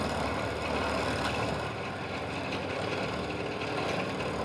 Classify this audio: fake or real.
real